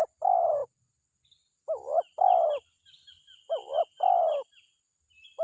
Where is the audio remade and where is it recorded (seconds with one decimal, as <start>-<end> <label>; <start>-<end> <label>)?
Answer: 0.0-5.4 recorded